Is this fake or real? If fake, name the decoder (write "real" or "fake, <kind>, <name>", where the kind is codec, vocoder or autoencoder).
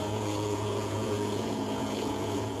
fake, vocoder, Vocos